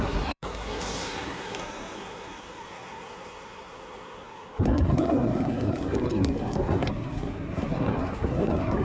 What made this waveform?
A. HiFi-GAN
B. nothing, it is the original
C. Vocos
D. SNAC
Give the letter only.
D